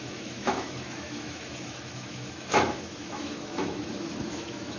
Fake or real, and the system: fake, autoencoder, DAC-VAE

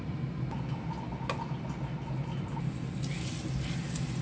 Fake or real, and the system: real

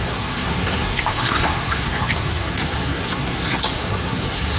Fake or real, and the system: fake, codec, SNAC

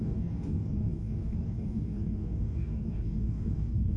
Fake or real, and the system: fake, codec, DAC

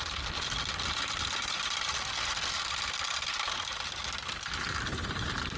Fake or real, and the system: real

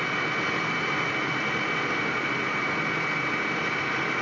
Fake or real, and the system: real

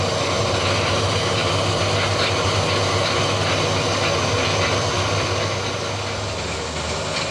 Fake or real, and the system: real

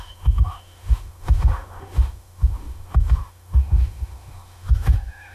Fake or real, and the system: fake, autoencoder, DAC-VAE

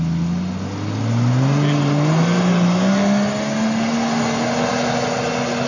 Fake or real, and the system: real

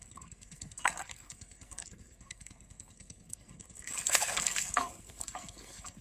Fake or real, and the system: fake, codec, SNAC